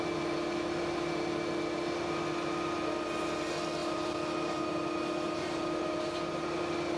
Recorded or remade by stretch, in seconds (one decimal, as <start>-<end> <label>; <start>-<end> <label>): 0.0-3.8 recorded; 3.8-6.6 remade; 6.6-7.0 recorded